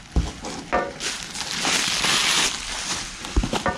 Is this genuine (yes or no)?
yes